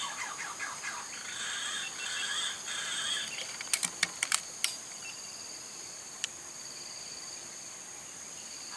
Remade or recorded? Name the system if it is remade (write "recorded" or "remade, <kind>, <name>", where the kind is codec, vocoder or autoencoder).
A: recorded